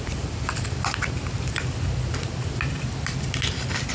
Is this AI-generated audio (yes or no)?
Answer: no